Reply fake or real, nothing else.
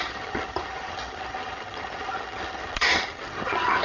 fake